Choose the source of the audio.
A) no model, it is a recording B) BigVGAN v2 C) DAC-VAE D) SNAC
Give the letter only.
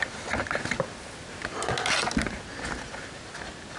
A